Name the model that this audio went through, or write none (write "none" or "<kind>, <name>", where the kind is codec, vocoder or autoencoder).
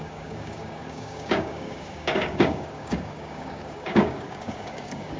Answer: codec, DAC